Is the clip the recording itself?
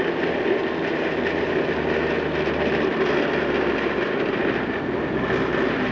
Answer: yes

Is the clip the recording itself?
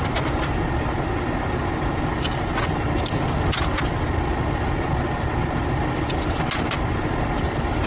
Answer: yes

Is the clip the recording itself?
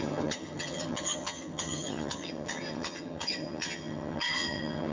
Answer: no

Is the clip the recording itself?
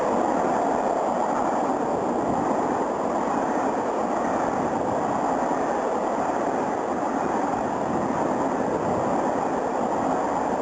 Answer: yes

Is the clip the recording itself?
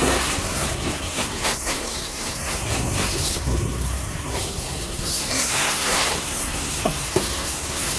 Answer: no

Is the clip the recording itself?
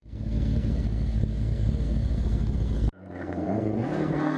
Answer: no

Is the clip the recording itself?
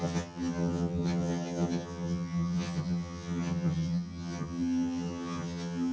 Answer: no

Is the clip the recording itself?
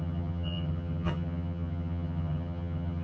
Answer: no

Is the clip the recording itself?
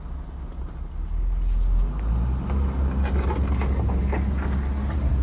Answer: yes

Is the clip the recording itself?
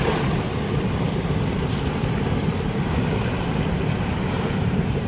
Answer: no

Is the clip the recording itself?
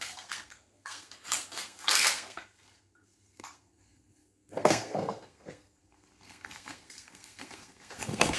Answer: no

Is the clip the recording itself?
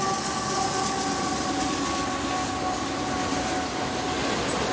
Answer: yes